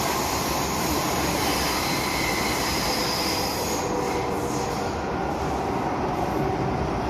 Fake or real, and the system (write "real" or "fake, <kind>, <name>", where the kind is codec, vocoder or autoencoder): real